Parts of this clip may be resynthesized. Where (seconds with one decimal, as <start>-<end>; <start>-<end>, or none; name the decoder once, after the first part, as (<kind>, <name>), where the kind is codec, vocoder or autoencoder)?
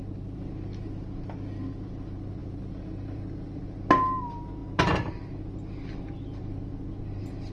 2.4-3.6 (vocoder, BigVGAN v2)